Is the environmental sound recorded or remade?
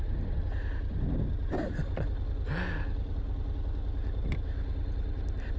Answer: recorded